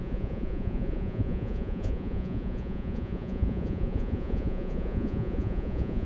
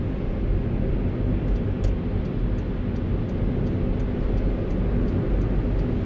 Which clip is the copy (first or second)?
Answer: first